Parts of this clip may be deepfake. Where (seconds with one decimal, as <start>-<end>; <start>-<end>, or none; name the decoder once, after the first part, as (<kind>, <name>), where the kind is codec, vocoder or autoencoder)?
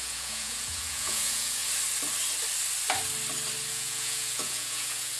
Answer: 0.0-1.6 (vocoder, Vocos); 3.7-5.2